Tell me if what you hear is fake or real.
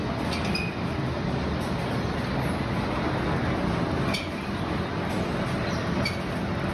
real